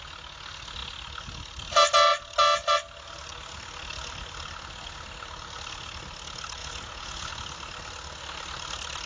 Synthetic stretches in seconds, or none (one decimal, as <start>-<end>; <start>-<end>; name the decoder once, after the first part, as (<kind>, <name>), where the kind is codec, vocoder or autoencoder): 6.6-7.3 (vocoder, Vocos)